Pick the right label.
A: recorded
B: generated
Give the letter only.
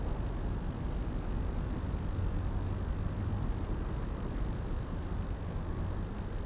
A